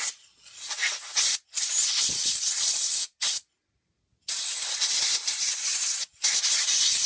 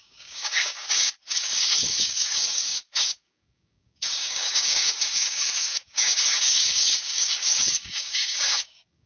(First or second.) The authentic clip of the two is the first